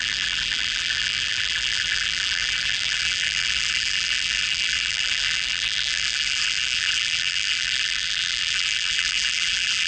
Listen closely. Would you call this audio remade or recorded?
remade